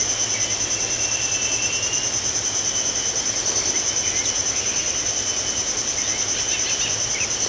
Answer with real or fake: real